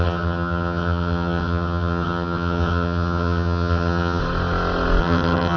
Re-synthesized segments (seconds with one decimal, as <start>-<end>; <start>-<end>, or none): 0.0-4.2; 5.0-5.6